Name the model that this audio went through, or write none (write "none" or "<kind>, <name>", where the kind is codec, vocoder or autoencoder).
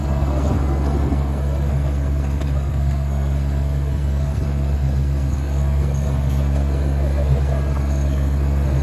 codec, SNAC